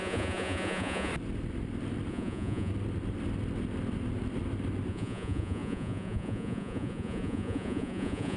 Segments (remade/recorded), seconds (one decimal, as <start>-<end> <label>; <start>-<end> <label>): 0.0-1.1 remade; 1.1-2.1 recorded; 2.1-2.7 remade; 2.7-4.9 recorded; 4.9-8.4 remade